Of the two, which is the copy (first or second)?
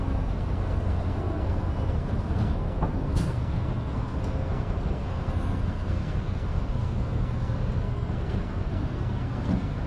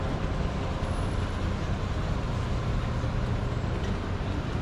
first